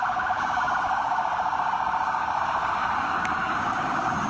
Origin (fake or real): fake